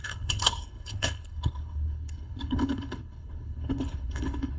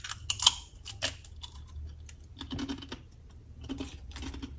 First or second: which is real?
second